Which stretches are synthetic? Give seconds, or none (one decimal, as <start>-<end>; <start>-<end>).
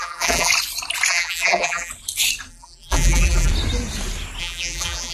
0.0-0.5; 1.1-1.9; 2.5-3.5; 4.4-5.1